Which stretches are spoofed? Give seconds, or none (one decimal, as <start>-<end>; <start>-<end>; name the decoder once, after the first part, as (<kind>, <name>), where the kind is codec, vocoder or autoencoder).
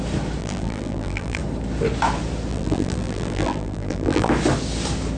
0.4-1.4 (vocoder, BigVGAN v2); 2.5-4.3